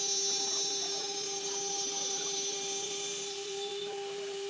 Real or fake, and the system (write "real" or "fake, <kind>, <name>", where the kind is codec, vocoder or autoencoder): fake, vocoder, BigVGAN v2